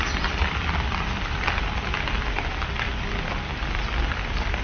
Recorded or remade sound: recorded